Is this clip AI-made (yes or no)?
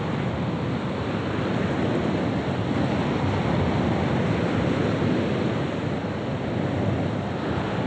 no